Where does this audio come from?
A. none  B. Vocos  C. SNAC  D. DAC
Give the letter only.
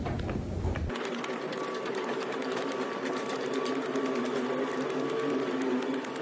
A